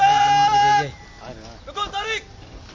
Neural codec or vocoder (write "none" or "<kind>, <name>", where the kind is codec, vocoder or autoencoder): none